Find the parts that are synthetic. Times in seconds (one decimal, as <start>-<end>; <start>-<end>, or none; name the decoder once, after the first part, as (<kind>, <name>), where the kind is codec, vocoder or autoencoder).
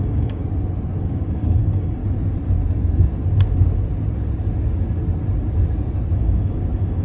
0.0-0.4 (codec, DAC); 1.0-2.0; 6.2-7.0